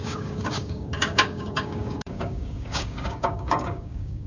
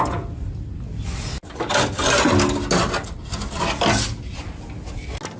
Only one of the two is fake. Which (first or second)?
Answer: first